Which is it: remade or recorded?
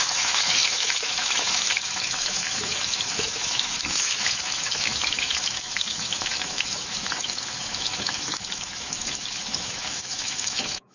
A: remade